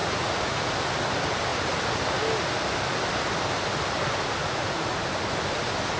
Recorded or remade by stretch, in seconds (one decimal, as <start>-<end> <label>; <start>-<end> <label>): 0.0-0.7 remade; 0.7-4.4 recorded; 4.4-5.0 remade; 5.0-6.0 recorded